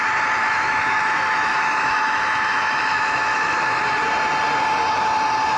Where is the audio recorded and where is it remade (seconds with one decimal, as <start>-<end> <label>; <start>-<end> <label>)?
0.0-0.4 recorded; 0.4-3.8 remade; 3.8-5.6 recorded